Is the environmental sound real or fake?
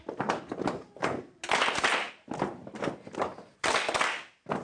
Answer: real